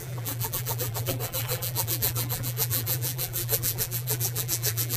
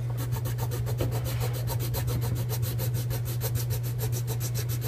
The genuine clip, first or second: second